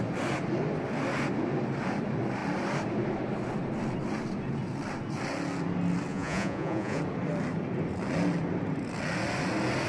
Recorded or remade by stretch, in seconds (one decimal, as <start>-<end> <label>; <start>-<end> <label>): 0.0-6.1 recorded; 6.1-7.0 remade; 7.0-9.9 recorded